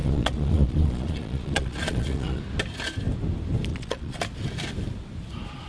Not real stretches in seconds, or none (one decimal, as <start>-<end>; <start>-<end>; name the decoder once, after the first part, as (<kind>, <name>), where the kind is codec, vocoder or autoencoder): 0.0-2.4 (vocoder, Vocos); 3.7-4.2